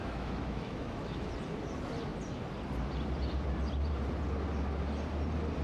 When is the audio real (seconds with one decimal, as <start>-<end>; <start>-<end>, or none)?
1.3-5.6